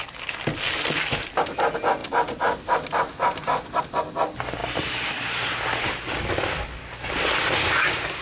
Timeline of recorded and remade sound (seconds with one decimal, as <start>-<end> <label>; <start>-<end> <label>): 0.0-8.2 recorded